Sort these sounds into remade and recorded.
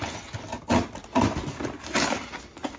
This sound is recorded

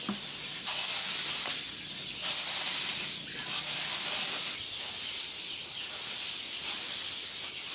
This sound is recorded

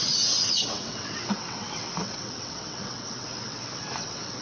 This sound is remade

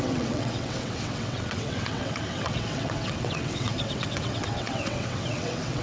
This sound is remade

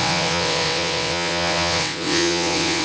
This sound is remade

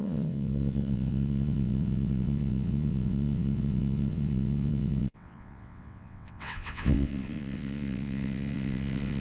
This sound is remade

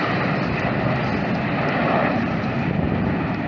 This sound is recorded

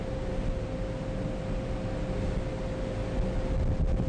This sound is recorded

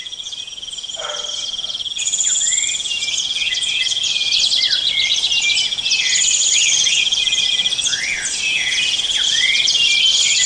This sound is recorded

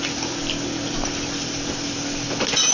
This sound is recorded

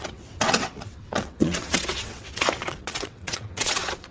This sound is remade